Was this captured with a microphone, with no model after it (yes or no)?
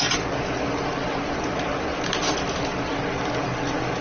yes